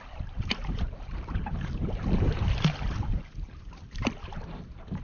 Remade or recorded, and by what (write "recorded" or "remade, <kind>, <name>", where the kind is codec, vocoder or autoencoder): remade, vocoder, BigVGAN v2